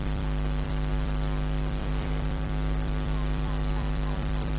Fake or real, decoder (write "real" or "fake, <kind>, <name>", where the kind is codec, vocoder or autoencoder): fake, vocoder, BigVGAN v2